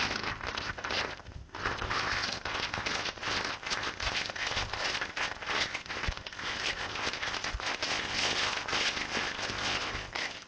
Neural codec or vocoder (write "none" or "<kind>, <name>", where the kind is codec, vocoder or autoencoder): codec, ZipCodec